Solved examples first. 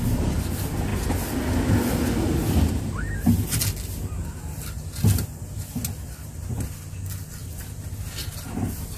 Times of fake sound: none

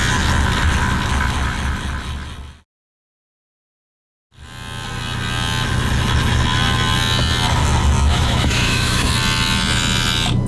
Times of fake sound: 8.1-9.1 (autoencoder, DAC-VAE)